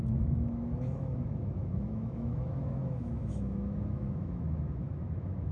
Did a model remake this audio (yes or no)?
yes